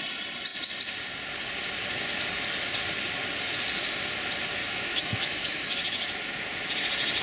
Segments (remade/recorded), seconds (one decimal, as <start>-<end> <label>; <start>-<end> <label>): 0.0-4.6 recorded; 4.6-6.1 remade; 6.1-7.2 recorded